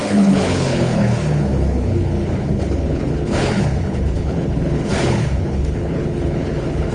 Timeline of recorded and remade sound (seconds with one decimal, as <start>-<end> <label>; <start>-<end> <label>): 0.0-6.9 remade